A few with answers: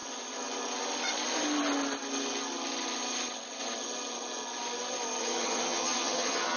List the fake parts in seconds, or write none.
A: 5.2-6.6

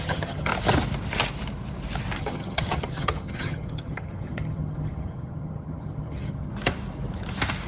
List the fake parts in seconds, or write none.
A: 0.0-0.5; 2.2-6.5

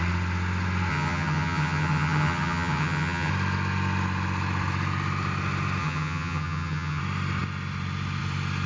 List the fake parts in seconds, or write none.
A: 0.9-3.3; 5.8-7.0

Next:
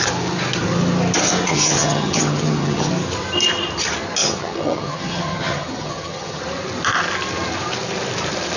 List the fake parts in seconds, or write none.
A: 1.5-2.9; 4.2-6.4

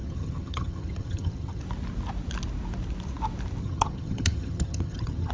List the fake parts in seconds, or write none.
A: 0.0-1.6; 3.6-5.3

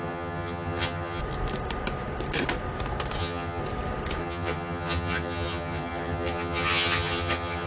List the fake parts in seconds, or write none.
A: 0.0-1.2; 3.2-3.6; 4.2-7.7

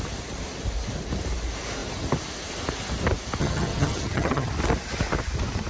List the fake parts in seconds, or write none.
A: 3.4-4.5